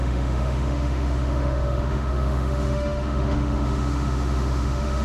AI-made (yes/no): yes